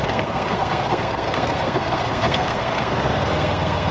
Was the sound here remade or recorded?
remade